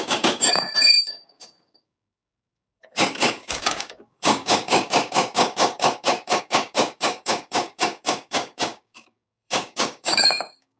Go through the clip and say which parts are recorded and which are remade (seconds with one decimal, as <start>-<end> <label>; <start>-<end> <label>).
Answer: 0.0-10.8 remade